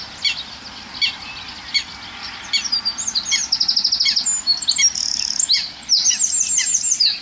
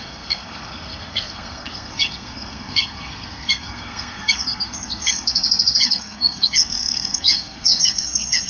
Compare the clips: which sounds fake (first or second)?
second